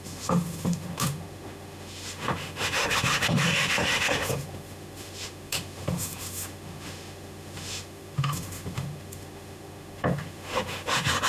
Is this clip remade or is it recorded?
remade